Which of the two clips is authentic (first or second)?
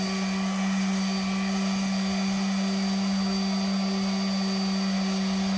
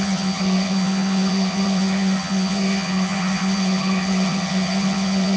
first